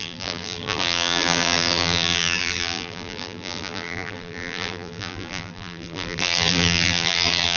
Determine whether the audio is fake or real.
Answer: fake